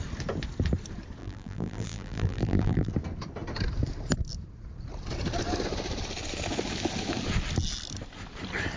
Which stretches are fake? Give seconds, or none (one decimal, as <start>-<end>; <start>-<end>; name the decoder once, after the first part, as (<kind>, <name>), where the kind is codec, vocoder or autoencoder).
1.2-2.9 (vocoder, BigVGAN v2)

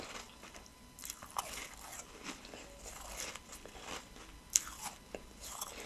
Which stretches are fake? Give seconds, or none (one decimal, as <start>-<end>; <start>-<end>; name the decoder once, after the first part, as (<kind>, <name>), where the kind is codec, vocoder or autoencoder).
0.7-1.4 (vocoder, BigVGAN v2)